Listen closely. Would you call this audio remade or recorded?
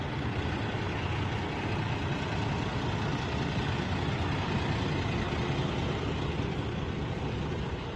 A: recorded